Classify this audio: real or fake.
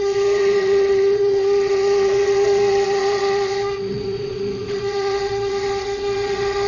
fake